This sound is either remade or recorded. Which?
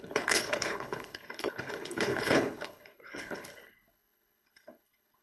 remade